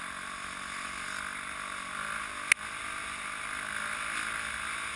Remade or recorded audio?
recorded